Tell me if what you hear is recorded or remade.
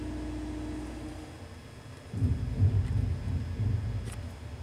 recorded